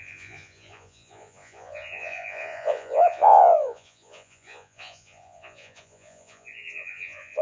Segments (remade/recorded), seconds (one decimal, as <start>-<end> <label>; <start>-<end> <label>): 0.0-7.4 remade